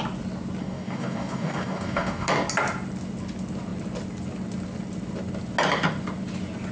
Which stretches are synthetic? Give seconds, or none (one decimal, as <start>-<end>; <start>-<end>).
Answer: 0.6-2.3